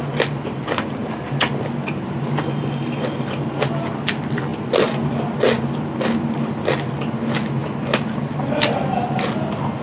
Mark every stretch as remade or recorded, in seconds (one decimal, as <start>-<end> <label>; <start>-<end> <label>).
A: 0.0-9.8 recorded